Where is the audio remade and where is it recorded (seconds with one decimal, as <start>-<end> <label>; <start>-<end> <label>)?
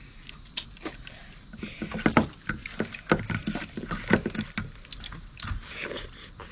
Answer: 0.0-6.5 recorded